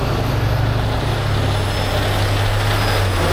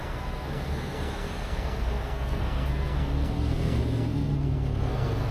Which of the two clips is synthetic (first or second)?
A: second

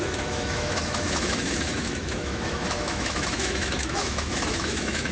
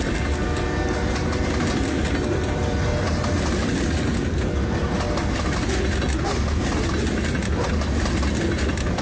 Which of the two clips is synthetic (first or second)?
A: first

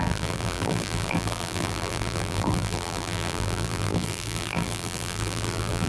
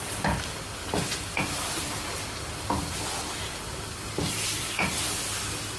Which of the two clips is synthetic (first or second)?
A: first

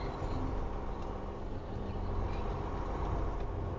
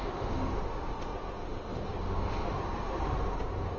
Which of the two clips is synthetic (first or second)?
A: second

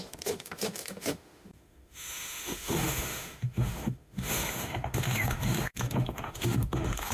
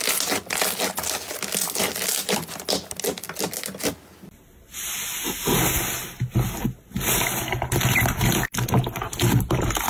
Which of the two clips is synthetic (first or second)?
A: first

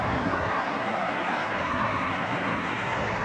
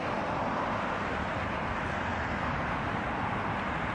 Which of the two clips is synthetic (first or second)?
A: first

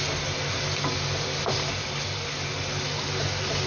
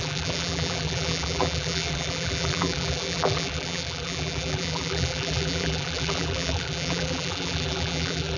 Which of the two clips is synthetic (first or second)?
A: second